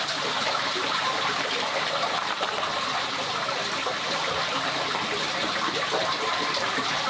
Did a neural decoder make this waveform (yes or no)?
no